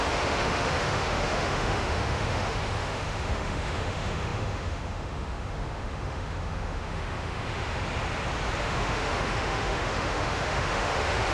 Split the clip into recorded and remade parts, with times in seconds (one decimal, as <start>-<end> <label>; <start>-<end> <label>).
0.0-7.8 remade; 7.8-8.6 recorded; 8.6-11.3 remade